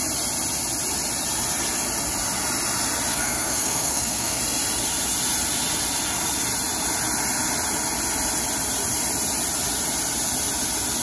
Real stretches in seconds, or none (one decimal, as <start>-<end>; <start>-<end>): 0.0-3.1; 4.4-11.0